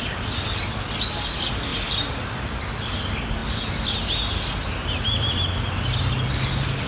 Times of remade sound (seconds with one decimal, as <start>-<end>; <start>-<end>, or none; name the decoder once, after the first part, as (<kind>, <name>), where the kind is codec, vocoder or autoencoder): none